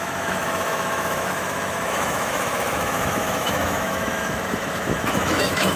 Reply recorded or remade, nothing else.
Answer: remade